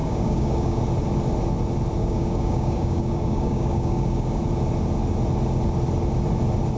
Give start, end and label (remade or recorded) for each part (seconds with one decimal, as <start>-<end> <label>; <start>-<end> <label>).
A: 0.0-0.8 remade; 0.8-2.0 recorded; 2.0-4.4 remade; 4.4-6.8 recorded